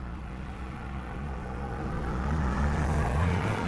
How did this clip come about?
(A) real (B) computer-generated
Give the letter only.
B